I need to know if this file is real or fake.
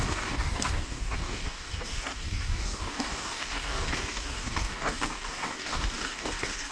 fake